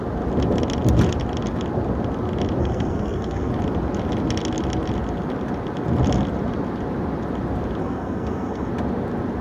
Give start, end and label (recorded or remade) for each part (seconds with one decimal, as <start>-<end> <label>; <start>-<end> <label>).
0.0-2.6 recorded; 2.6-3.5 remade; 3.5-7.8 recorded; 7.8-8.7 remade; 8.7-9.4 recorded